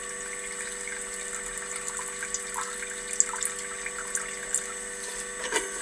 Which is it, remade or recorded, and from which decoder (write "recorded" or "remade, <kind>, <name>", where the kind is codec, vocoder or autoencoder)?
recorded